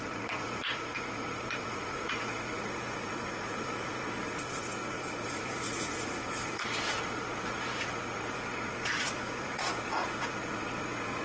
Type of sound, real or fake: fake